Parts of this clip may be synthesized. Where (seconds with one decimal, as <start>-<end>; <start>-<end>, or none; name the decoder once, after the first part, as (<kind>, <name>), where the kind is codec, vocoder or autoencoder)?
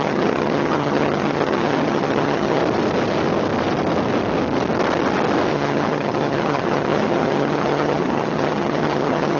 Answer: 0.0-2.6 (vocoder, HiFi-GAN); 5.5-9.4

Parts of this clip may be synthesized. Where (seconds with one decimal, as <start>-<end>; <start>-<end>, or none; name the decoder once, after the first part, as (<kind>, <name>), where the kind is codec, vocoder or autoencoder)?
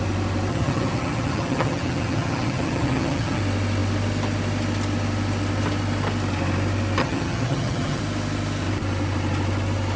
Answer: 0.5-3.4 (vocoder, HiFi-GAN); 7.0-8.0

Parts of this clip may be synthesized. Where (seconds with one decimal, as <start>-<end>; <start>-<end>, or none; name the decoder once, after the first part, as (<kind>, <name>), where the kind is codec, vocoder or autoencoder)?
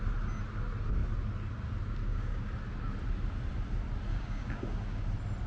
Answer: 2.0-2.5 (codec, DAC); 4.1-5.0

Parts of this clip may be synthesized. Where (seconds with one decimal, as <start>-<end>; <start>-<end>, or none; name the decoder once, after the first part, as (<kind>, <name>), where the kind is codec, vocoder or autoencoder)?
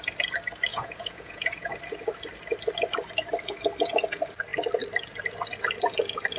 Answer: 0.7-1.7 (vocoder, Vocos)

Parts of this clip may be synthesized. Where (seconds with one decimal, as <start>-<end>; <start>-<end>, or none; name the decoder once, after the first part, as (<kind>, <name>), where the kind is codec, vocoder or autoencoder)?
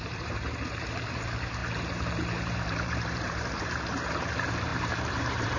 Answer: 0.0-5.6 (vocoder, BigVGAN v2)